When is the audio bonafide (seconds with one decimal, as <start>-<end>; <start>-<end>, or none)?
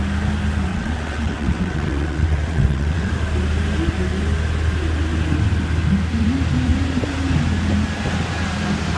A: 0.0-0.7; 3.1-9.0